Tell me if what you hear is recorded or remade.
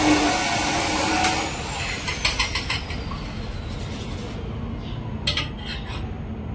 recorded